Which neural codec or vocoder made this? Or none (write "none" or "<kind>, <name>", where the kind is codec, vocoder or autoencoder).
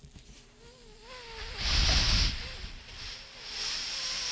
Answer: none